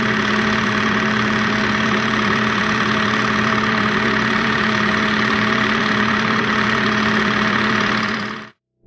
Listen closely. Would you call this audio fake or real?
fake